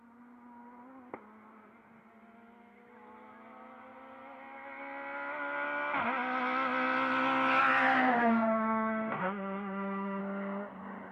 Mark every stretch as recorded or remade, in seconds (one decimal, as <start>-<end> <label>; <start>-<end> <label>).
0.0-8.2 recorded; 8.2-10.2 remade; 10.2-11.1 recorded